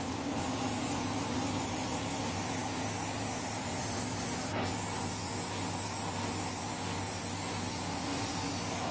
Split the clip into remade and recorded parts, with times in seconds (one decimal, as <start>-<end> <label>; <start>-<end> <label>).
0.0-8.9 recorded